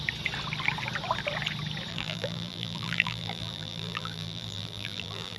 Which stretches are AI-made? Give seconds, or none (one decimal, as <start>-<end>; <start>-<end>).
1.9-5.4